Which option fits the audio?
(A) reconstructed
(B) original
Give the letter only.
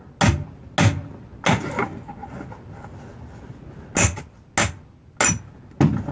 B